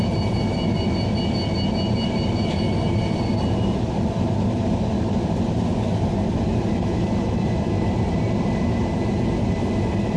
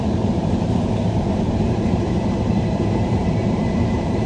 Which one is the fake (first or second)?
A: second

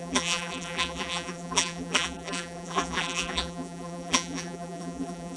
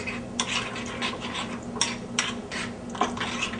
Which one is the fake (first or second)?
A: first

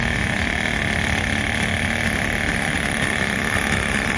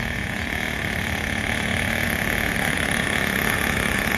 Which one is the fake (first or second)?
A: second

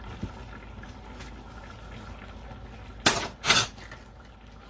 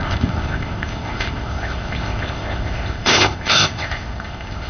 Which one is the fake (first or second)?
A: second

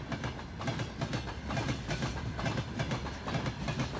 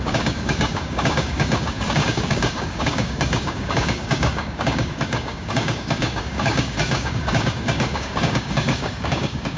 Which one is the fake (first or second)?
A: second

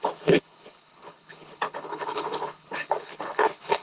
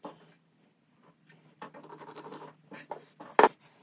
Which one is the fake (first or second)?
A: first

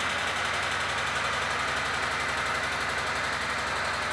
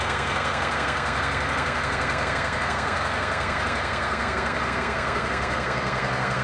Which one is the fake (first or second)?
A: second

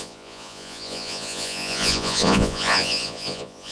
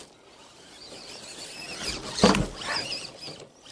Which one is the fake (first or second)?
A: first